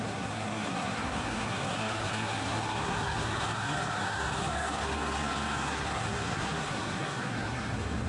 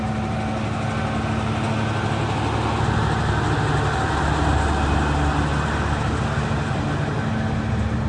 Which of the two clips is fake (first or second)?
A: first